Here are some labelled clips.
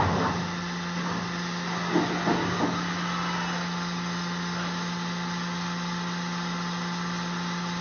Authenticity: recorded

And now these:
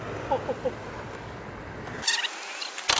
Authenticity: recorded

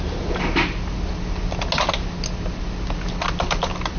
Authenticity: recorded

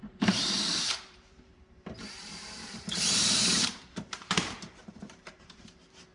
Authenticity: remade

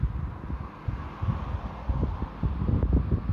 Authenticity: recorded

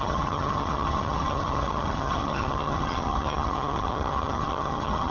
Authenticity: remade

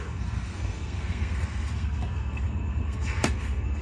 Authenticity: remade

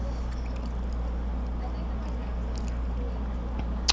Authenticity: recorded